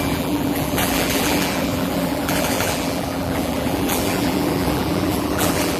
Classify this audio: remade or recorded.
remade